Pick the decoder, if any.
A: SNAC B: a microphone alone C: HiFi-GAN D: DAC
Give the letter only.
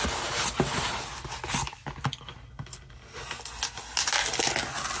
B